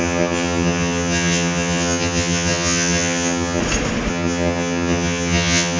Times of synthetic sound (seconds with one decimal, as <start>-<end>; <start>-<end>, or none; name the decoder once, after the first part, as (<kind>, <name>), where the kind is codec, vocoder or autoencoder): 0.0-3.6 (vocoder, HiFi-GAN); 4.1-5.8